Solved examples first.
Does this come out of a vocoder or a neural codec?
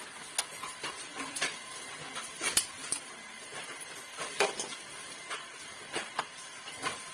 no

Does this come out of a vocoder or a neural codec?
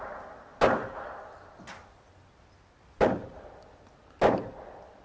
no